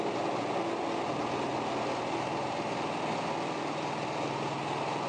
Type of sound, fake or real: real